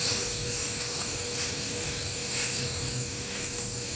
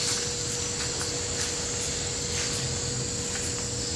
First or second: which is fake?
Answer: first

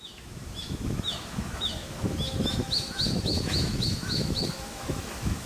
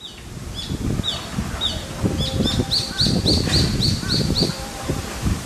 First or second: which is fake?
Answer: first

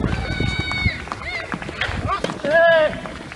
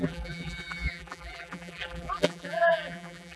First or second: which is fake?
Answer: second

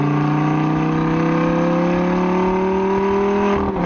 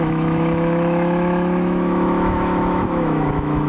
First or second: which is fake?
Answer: second